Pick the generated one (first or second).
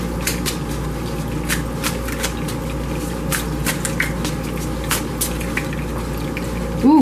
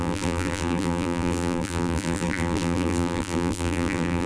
second